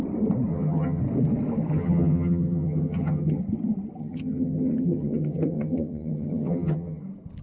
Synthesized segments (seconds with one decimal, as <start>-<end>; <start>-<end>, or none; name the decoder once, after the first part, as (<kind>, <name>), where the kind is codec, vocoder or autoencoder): 0.5-1.0 (vocoder, HiFi-GAN); 1.7-3.4; 4.0-7.0